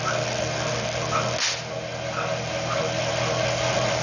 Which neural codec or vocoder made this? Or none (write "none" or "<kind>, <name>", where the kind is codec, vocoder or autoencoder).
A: none